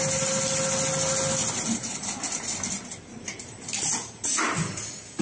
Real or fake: real